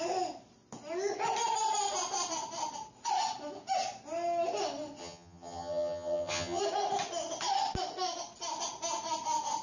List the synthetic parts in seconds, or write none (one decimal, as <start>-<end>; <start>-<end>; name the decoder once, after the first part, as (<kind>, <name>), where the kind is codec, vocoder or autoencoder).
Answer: 5.0-6.6 (vocoder, HiFi-GAN)